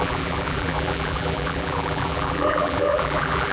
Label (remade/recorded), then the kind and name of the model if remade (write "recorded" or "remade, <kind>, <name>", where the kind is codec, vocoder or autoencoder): remade, vocoder, BigVGAN v2